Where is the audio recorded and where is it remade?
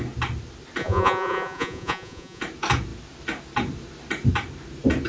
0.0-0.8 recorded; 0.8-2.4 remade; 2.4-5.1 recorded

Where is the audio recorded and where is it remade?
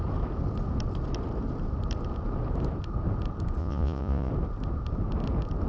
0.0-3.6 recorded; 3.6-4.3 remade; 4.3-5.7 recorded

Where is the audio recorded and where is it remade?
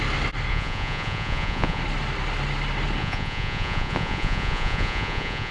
0.0-0.5 recorded; 0.5-1.8 remade; 1.8-3.0 recorded; 3.0-5.5 remade